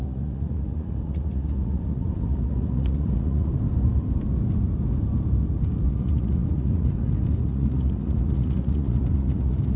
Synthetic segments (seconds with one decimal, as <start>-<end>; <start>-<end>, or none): 0.0-3.5; 5.9-9.8